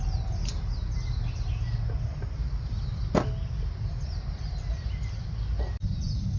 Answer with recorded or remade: recorded